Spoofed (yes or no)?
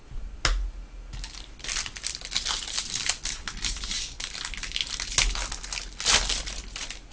no